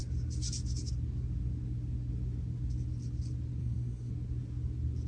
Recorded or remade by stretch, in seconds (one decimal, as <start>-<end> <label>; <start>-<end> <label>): 0.0-3.6 recorded; 3.6-4.1 remade; 4.1-5.1 recorded